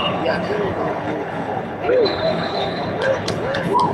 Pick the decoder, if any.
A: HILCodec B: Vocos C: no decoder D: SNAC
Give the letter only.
A